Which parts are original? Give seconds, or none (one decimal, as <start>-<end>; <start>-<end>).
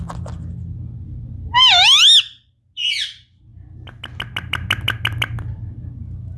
0.0-6.4